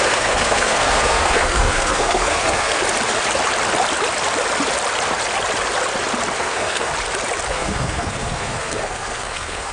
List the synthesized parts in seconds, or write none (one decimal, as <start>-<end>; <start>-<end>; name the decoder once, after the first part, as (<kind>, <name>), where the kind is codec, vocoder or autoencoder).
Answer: 0.0-2.8 (codec, SNAC); 6.4-6.9; 7.5-9.7